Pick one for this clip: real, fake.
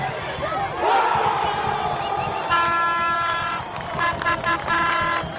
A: real